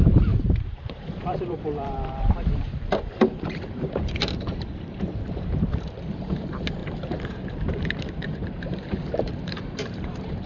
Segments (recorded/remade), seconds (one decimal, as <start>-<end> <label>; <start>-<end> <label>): 0.0-10.5 remade